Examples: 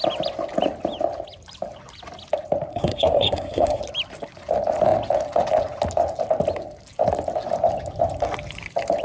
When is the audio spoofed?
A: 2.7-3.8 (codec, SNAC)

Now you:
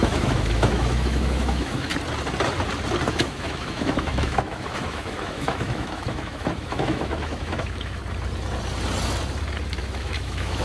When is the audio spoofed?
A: 0.0-1.9 (autoencoder, DAC-VAE); 3.1-8.0; 9.8-10.6

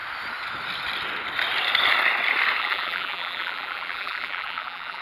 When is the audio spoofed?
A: 2.6-5.0 (vocoder, BigVGAN v2)